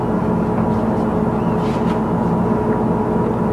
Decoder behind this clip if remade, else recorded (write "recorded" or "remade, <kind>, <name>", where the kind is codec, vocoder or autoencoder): recorded